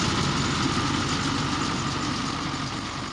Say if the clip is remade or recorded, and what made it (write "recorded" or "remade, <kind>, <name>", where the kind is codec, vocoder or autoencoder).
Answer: recorded